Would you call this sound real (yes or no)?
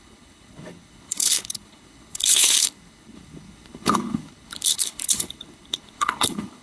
no